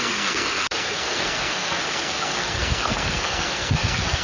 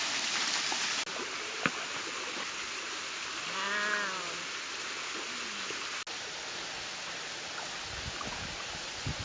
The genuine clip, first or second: second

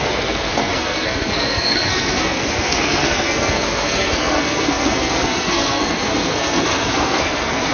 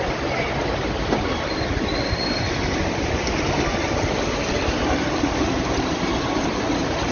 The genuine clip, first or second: second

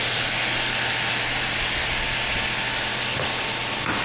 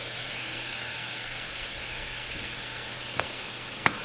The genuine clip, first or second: first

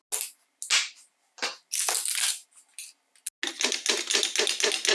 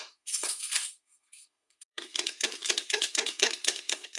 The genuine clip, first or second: first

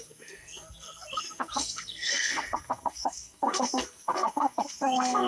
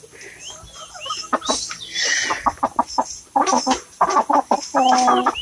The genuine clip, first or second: second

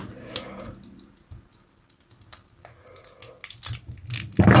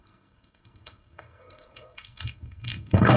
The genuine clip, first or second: first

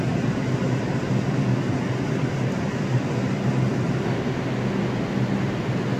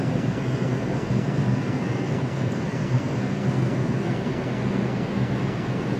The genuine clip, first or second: first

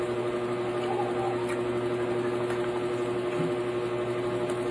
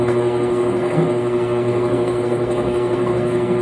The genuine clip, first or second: first